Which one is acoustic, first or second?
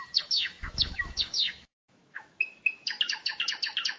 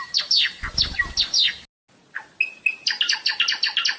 second